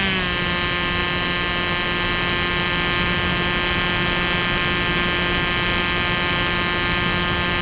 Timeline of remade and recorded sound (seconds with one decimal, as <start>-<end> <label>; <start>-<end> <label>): 0.0-7.6 recorded